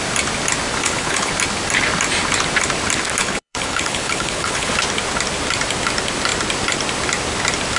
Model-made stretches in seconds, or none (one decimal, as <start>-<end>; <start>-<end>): 0.8-1.3; 3.2-4.7